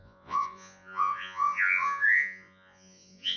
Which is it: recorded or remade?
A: remade